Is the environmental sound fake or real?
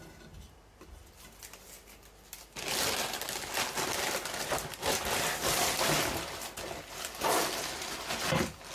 real